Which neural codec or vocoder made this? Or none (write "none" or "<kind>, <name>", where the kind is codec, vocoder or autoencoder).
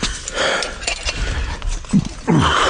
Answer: none